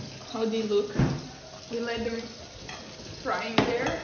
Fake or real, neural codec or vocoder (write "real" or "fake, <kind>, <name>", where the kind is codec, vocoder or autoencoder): real